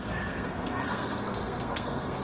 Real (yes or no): no